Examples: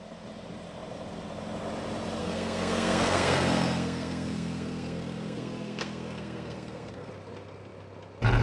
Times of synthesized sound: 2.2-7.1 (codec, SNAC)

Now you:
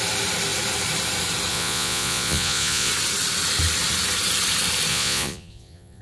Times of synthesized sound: 1.5-2.9 (vocoder, Vocos); 4.9-6.0

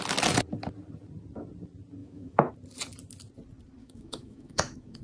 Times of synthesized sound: 2.0-2.5 (autoencoder, DAC-VAE); 3.8-5.0

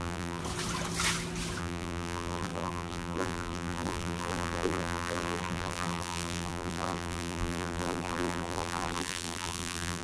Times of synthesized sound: 0.0-0.4 (vocoder, BigVGAN v2); 1.6-10.0

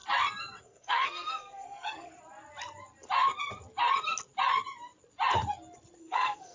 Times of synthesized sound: 0.6-2.1 (codec, SNAC); 6.0-6.5

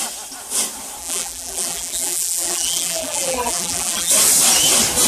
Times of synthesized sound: 1.0-4.1 (vocoder, BigVGAN v2)

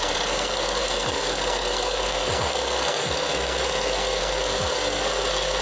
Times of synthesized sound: 0.0-5.6 (codec, SNAC)